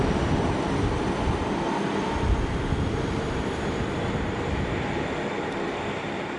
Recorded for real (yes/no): yes